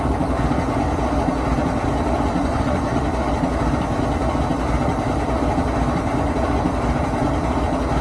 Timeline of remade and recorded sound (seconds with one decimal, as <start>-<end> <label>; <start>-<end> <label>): 0.0-2.4 recorded; 2.4-3.0 remade; 3.0-8.0 recorded